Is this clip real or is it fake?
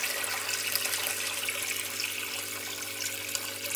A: real